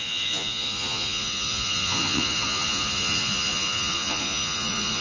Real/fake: fake